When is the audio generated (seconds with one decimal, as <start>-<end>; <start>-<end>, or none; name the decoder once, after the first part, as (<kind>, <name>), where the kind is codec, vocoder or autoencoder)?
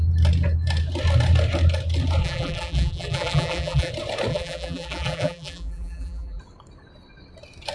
2.2-3.9 (vocoder, BigVGAN v2); 4.3-6.4